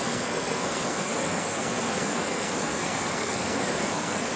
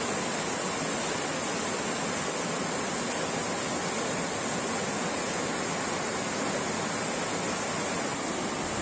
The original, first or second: second